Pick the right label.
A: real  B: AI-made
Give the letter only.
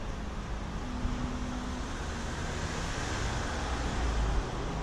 A